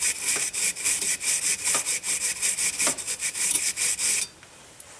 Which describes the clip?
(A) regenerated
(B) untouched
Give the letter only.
A